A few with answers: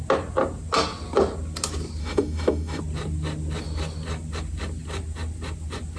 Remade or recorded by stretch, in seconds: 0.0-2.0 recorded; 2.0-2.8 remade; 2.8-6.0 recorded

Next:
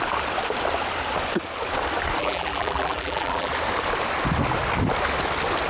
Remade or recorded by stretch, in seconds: 0.0-2.2 recorded; 2.2-3.5 remade; 3.5-5.7 recorded

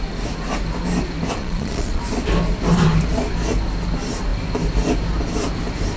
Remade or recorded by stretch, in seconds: 0.0-1.4 recorded; 1.4-2.0 remade; 2.0-6.0 recorded

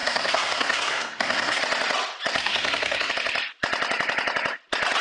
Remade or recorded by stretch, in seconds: 0.0-1.6 remade; 1.6-2.4 recorded; 2.4-3.1 remade; 3.1-5.0 recorded

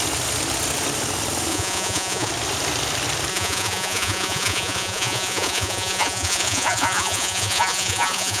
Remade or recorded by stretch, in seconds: 0.0-1.5 recorded; 1.5-2.3 remade; 2.3-3.3 recorded; 3.3-8.4 remade

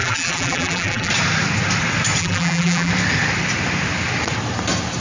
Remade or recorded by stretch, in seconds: 0.0-1.1 remade; 1.1-2.2 recorded; 2.2-2.9 remade; 2.9-5.0 recorded

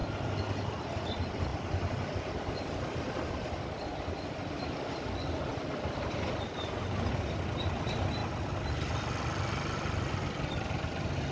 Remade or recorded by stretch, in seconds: 0.0-1.5 recorded; 1.5-6.7 remade; 6.7-11.3 recorded

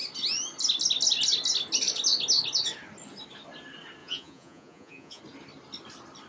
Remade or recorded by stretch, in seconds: 0.0-4.0 recorded; 4.0-5.2 remade; 5.2-6.3 recorded